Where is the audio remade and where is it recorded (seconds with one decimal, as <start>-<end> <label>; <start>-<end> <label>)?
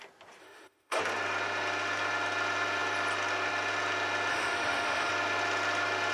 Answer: 0.0-0.4 recorded; 0.4-1.0 remade; 1.0-4.3 recorded; 4.3-5.1 remade; 5.1-6.1 recorded